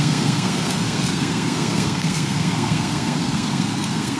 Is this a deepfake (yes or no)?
yes